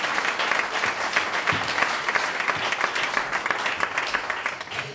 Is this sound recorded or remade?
recorded